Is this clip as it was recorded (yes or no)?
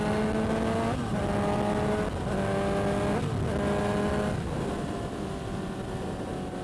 yes